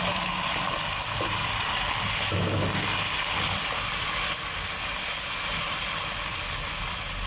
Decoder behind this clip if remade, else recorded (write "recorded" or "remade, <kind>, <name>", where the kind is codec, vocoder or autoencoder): recorded